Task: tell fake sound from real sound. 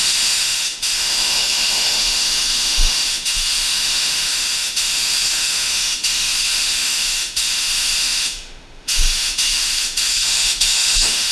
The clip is fake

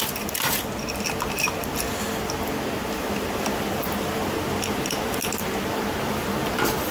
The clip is real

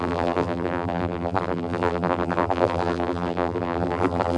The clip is fake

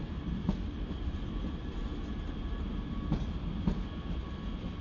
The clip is real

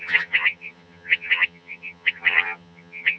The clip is fake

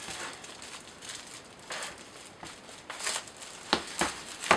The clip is real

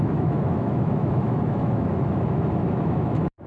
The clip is fake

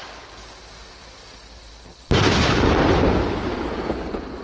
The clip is real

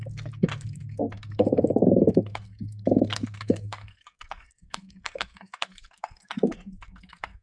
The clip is fake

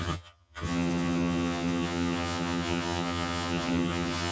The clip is fake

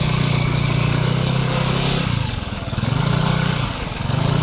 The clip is fake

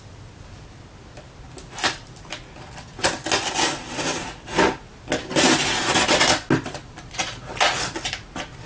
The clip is real